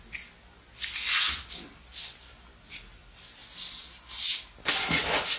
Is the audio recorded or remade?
recorded